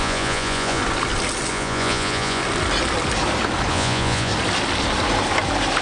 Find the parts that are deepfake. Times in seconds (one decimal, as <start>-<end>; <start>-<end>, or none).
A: 0.0-0.8; 1.5-2.4; 3.7-4.3